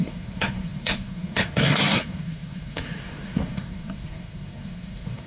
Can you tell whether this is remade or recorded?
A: remade